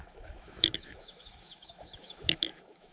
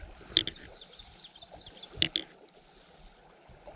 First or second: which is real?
second